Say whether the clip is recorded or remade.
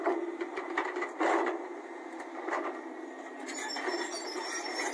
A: remade